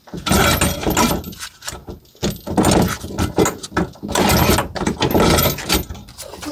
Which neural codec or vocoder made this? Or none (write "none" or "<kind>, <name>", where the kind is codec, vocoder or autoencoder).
none